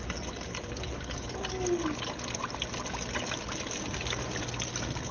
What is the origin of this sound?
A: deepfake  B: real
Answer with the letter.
B